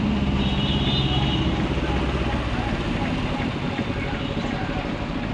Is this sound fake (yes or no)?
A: no